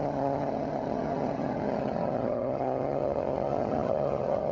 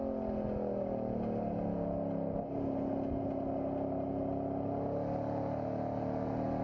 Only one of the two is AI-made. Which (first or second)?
first